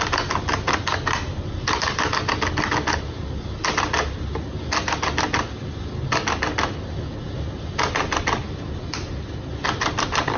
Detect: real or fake real